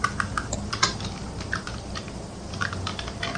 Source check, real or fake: real